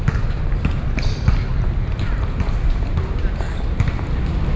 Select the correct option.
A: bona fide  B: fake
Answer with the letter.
A